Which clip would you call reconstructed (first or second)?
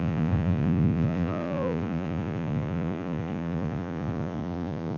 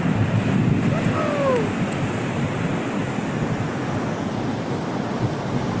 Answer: first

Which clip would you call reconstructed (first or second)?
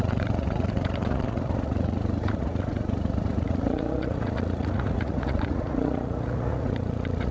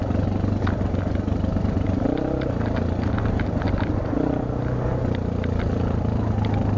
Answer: first